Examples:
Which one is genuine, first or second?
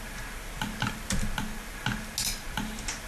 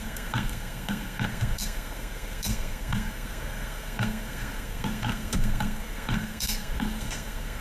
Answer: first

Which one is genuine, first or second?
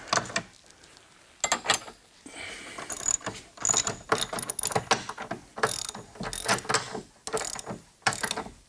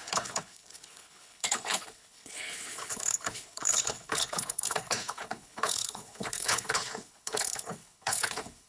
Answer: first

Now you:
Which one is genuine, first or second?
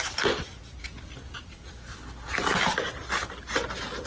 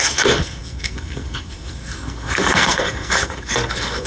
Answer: first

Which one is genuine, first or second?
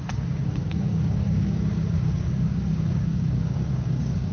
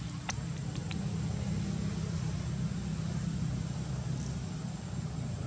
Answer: second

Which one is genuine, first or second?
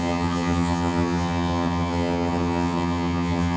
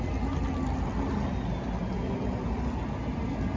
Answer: second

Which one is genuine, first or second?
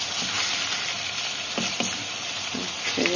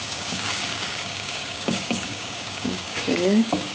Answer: first